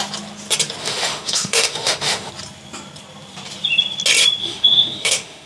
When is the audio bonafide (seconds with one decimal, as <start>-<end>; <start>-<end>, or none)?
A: 0.0-0.8; 2.3-4.4